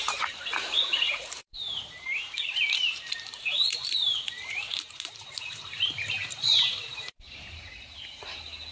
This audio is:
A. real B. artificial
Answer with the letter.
B